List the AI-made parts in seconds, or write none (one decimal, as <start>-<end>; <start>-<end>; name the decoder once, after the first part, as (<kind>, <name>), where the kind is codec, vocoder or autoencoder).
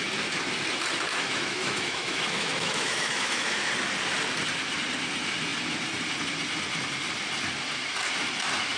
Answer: 1.1-3.7 (autoencoder, DAC-VAE)